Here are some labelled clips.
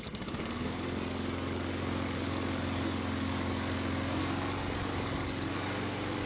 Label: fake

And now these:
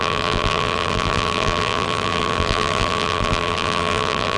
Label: fake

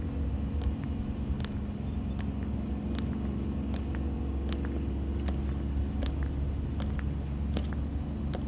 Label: real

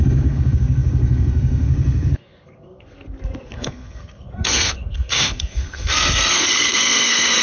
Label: fake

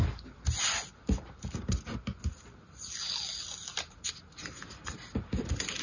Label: real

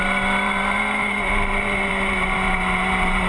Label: fake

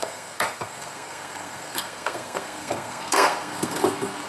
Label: fake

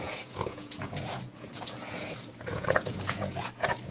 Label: fake